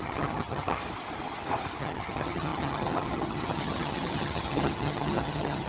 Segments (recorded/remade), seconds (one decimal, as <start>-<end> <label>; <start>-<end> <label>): 0.0-0.8 remade; 0.8-1.8 recorded; 1.8-5.7 remade